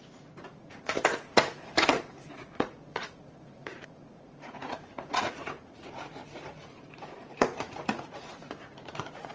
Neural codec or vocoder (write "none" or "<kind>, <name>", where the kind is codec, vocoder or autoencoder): vocoder, Vocos